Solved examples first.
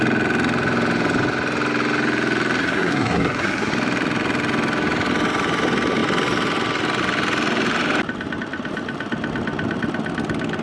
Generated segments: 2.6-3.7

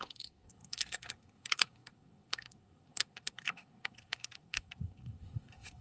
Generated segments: 0.0-5.8

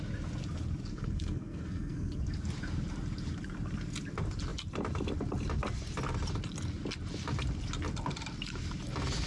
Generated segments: 0.9-2.2

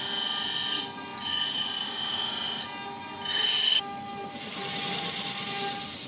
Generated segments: none

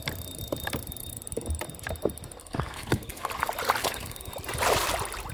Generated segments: 2.4-3.3; 3.8-4.3

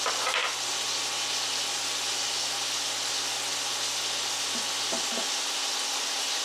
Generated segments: none

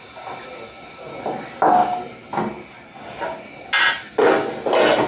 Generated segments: none